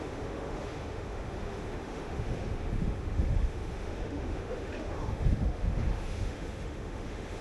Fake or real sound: fake